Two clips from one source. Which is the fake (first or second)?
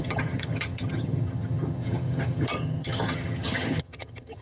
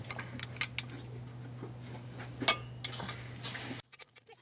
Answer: first